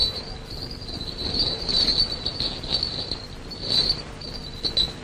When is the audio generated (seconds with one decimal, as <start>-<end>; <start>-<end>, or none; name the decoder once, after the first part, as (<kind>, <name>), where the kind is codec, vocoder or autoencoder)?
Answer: none

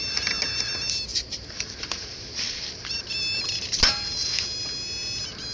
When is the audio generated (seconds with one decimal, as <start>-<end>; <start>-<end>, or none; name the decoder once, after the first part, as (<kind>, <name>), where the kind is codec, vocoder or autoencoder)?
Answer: 1.1-3.1 (vocoder, BigVGAN v2)

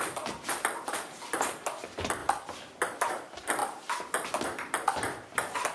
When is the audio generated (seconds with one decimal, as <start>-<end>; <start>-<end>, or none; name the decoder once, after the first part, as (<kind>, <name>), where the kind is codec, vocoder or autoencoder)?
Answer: 0.0-3.6 (vocoder, BigVGAN v2); 4.4-5.7

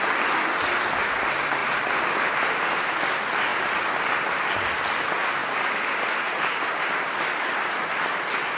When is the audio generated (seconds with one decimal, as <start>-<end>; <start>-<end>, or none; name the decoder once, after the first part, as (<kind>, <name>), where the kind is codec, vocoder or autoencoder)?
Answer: 5.4-6.7 (vocoder, BigVGAN v2)

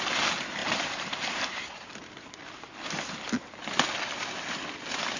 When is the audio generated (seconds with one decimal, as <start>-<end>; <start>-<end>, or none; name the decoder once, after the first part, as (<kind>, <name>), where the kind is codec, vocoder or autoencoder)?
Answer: 0.6-2.3 (vocoder, BigVGAN v2)

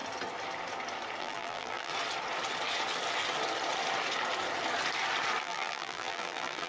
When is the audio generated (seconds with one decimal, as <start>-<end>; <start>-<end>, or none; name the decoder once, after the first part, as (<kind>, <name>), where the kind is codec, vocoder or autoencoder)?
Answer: 1.2-1.9 (vocoder, BigVGAN v2); 5.4-6.7